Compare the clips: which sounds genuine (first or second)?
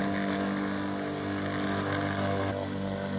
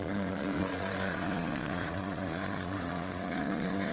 first